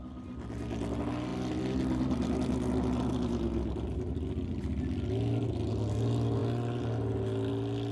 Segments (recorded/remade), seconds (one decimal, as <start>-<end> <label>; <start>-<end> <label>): 0.0-7.9 recorded